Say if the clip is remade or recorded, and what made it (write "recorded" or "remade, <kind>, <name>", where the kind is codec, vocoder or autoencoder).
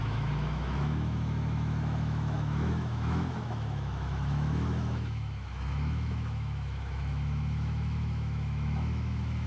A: remade, autoencoder, DAC-VAE